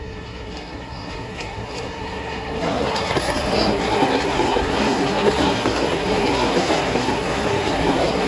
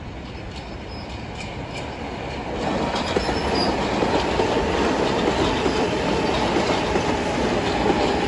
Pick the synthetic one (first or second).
first